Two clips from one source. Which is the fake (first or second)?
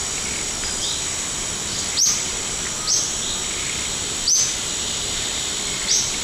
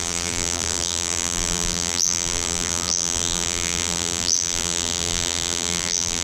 second